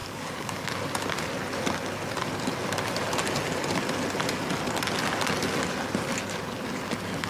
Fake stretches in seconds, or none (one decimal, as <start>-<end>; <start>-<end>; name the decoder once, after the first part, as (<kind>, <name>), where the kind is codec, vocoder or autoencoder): 0.0-0.7 (codec, DAC)